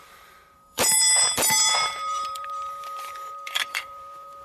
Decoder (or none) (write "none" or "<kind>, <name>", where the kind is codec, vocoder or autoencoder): vocoder, BigVGAN v2